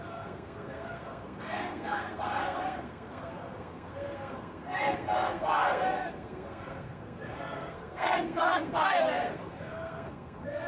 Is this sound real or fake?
fake